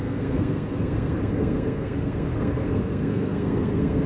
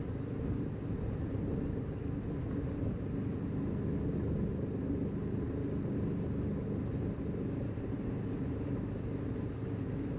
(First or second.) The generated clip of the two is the first